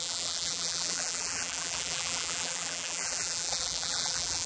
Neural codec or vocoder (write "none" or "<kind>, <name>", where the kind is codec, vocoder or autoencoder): vocoder, BigVGAN v2